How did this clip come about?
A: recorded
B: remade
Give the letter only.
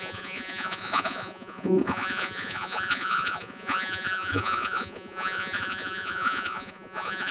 B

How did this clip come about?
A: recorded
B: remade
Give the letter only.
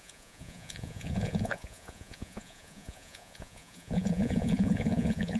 B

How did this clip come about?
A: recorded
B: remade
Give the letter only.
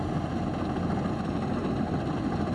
A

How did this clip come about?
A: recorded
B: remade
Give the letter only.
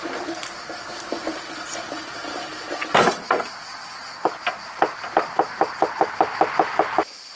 A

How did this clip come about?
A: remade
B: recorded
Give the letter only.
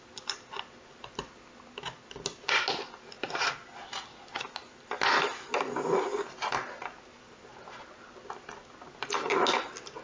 B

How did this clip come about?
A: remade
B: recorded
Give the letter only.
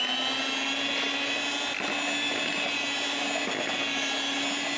B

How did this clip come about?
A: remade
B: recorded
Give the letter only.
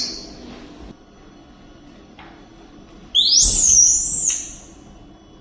B